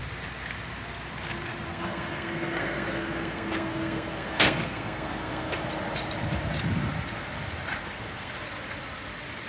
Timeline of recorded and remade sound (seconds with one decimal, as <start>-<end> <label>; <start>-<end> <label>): 0.0-1.7 recorded; 1.7-5.7 remade; 5.7-7.8 recorded; 7.8-8.3 remade; 8.3-9.5 recorded